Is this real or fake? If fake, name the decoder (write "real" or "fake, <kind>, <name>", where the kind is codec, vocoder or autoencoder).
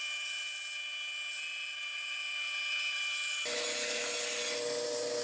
real